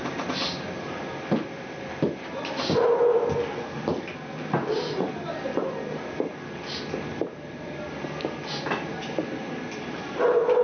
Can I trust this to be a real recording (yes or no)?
yes